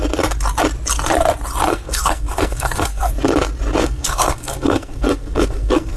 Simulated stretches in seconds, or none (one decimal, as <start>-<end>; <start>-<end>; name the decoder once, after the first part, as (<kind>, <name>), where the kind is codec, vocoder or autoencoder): 1.7-3.1 (codec, SNAC); 3.8-6.0